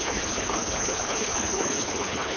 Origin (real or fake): fake